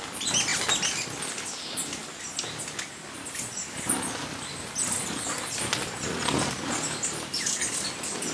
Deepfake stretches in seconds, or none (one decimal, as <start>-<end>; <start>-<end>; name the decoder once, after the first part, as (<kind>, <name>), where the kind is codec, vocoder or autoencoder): none